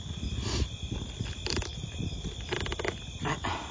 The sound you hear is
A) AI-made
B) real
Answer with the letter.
B